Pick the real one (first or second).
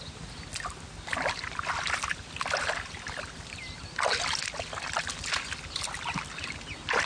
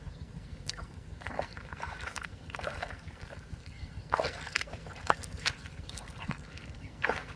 first